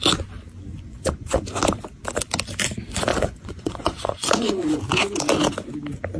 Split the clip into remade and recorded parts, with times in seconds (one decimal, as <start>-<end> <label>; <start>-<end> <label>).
0.0-0.7 recorded; 0.7-1.5 remade; 1.5-3.1 recorded; 3.1-4.8 remade; 4.8-6.2 recorded